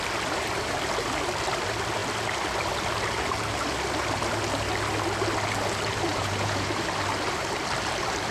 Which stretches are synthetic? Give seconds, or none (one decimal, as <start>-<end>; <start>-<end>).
6.1-6.7